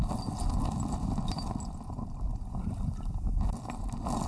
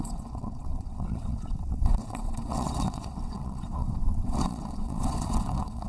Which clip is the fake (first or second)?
second